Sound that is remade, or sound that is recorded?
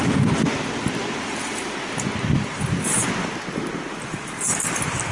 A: recorded